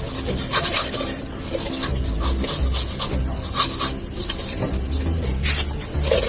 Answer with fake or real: real